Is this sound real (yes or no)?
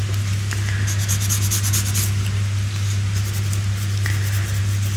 yes